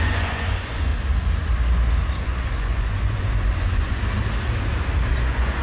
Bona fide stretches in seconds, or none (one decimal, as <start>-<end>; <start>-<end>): 0.9-2.2; 4.0-5.1